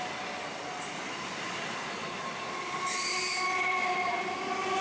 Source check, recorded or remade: recorded